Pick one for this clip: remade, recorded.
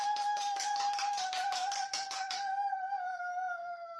remade